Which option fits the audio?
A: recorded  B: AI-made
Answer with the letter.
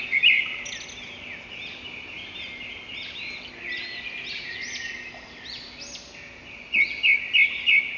A